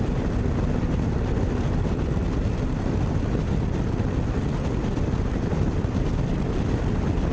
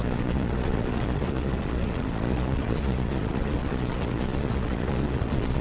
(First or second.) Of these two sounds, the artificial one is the second